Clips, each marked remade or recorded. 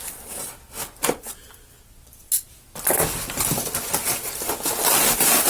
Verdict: recorded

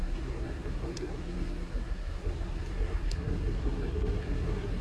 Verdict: remade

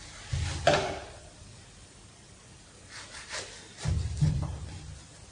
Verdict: recorded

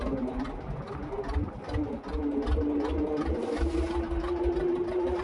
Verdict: recorded